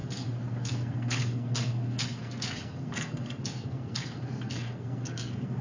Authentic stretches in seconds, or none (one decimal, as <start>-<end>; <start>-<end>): none

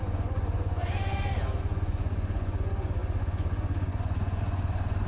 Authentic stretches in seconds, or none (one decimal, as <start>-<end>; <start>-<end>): 1.1-1.6

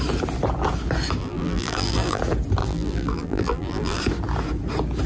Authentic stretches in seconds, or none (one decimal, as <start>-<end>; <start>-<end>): 0.0-1.2; 2.2-2.6; 4.0-5.1

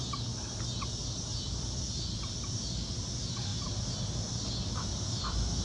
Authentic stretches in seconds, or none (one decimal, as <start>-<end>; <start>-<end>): 0.0-1.0; 2.6-4.9

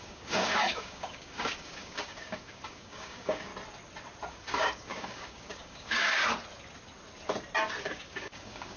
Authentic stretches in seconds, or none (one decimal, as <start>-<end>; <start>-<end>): 3.5-4.3; 6.2-7.8

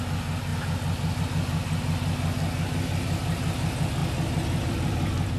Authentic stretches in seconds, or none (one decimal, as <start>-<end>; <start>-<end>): 0.0-5.4

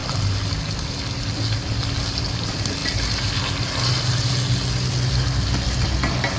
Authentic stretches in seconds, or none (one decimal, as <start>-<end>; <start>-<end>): 0.0-6.4